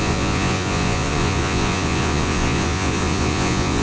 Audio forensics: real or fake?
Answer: fake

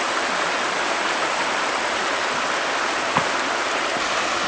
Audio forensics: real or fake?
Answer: real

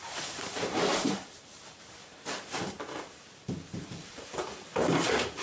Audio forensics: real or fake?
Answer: fake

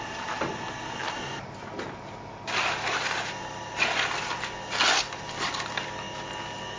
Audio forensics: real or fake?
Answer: real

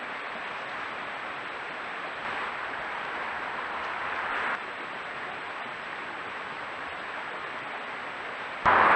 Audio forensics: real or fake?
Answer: real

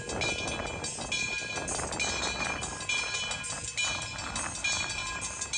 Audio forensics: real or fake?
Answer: real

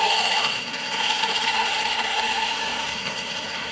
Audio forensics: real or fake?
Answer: fake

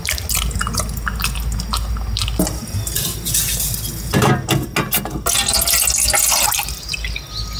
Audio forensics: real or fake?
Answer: real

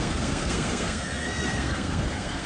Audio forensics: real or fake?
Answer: fake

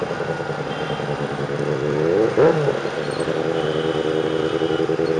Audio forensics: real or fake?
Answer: real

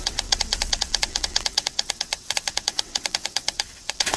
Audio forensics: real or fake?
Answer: fake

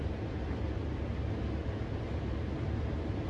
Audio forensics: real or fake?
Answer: real